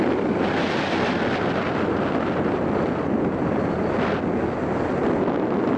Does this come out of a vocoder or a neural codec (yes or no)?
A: no